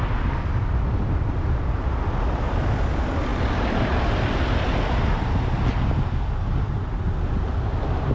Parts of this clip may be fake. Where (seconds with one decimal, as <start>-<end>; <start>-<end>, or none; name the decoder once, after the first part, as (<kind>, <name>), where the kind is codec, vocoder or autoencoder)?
3.3-4.4 (vocoder, BigVGAN v2)